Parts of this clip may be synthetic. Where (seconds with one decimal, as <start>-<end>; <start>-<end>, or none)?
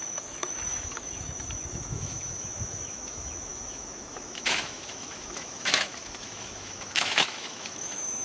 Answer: 0.0-8.2